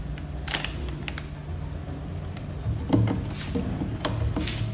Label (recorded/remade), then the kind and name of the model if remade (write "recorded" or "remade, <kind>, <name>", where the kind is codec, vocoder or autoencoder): recorded